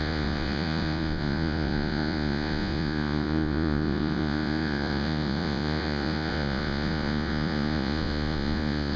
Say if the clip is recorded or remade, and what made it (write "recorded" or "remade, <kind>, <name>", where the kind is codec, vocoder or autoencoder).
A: remade, vocoder, Vocos